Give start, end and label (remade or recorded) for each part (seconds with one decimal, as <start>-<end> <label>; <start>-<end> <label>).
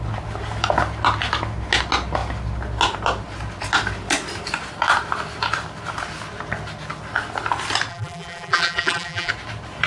0.0-7.9 recorded; 7.9-9.3 remade; 9.3-9.9 recorded